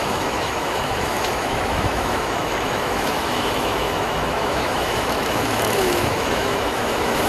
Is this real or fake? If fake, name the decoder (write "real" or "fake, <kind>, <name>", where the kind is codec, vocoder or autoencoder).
fake, autoencoder, DAC-VAE